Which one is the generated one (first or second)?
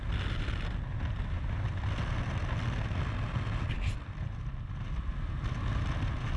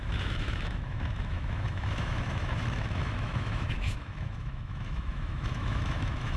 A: second